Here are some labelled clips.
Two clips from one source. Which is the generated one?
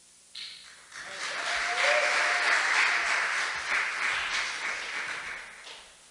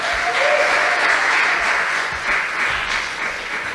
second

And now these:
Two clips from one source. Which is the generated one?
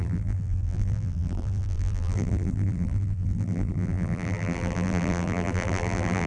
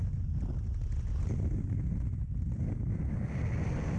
first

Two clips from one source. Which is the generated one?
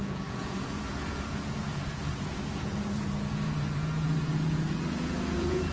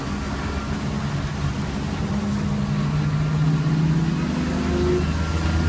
first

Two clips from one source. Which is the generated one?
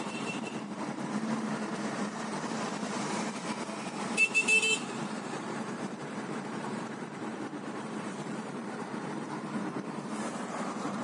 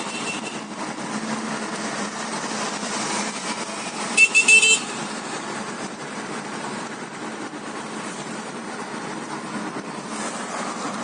first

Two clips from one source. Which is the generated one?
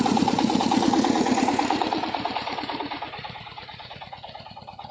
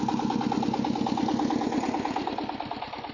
first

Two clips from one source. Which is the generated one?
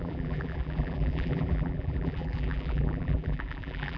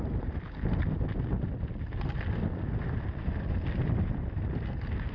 first